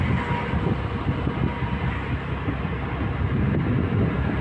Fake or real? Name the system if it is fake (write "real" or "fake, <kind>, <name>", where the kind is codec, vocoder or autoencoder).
real